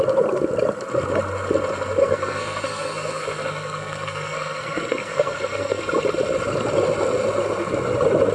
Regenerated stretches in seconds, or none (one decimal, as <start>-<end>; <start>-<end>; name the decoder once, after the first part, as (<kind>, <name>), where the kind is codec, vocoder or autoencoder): 2.0-5.8 (codec, SNAC)